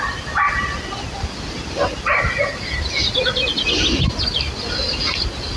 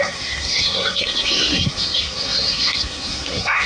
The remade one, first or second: second